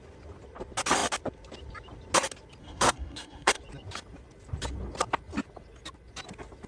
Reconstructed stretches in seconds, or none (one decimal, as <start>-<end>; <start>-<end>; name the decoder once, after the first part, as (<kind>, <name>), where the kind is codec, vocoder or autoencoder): 2.6-3.6 (codec, SNAC)